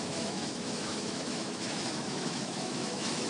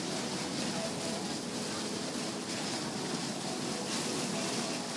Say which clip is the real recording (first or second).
second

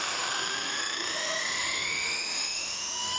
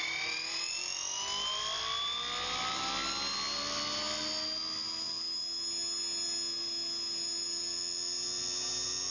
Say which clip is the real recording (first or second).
second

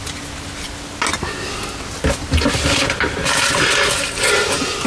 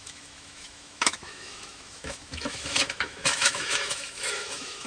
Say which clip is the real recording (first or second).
first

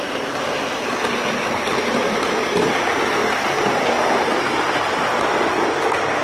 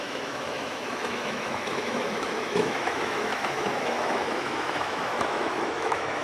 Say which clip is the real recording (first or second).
first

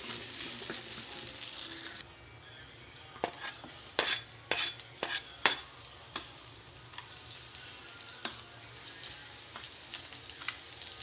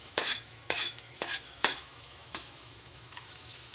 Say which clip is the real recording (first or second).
first